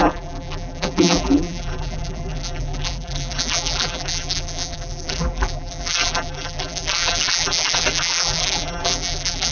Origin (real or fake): fake